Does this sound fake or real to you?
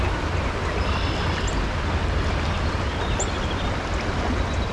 real